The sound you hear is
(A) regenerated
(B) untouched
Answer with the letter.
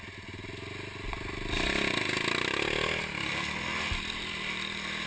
B